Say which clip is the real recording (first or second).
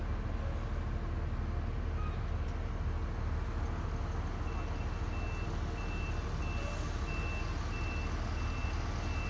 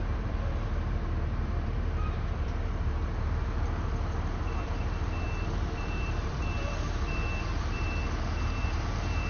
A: first